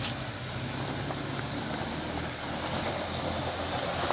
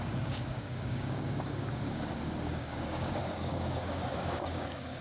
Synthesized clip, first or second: second